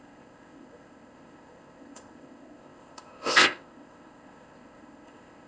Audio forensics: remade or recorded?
remade